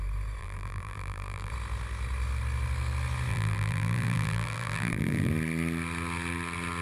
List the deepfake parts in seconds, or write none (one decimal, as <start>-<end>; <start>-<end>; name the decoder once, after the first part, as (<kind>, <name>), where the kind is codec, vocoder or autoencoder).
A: 0.4-1.5 (vocoder, BigVGAN v2); 3.3-5.3